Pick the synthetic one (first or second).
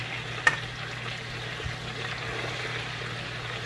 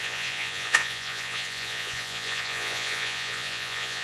second